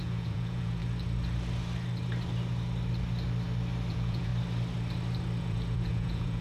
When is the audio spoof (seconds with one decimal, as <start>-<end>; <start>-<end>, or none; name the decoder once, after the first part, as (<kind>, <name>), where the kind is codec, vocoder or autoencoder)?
0.0-0.8 (vocoder, Vocos); 3.9-4.3; 5.4-6.4